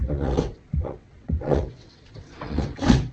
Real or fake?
fake